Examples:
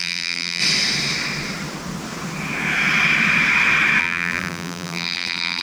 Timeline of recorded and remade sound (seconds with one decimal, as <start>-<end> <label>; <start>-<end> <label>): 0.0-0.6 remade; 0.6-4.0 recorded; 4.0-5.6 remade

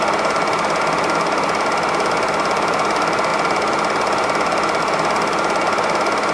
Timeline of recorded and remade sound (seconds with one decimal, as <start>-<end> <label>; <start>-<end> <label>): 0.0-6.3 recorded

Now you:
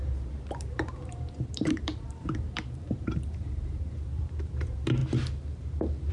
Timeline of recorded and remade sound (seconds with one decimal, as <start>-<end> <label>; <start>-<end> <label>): 0.0-5.0 remade; 5.0-6.1 recorded